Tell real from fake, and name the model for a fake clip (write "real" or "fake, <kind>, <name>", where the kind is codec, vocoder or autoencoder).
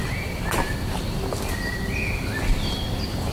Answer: fake, vocoder, BigVGAN v2